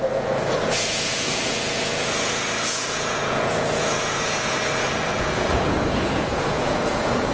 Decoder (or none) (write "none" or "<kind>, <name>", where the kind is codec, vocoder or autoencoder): vocoder, Vocos